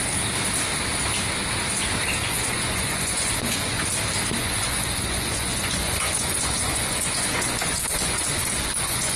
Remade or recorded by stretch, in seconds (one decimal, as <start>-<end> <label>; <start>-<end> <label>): 0.0-2.2 recorded; 2.2-3.8 remade; 3.8-4.4 recorded; 4.4-9.2 remade